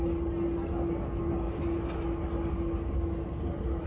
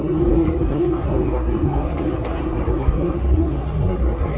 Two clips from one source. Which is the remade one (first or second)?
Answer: second